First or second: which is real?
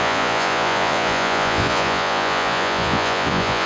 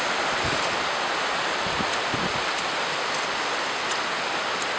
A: second